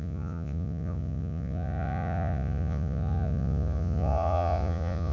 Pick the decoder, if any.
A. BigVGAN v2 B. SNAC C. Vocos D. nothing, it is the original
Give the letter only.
C